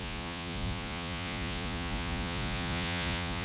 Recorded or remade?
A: remade